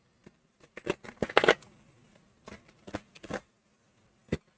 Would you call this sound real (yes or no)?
yes